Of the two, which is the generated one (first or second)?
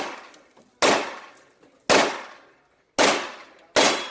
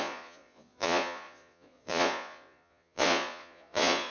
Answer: second